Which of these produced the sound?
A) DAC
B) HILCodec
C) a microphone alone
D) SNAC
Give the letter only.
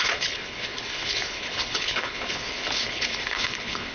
B